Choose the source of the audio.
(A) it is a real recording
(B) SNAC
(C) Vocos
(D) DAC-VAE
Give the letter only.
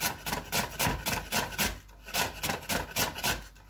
A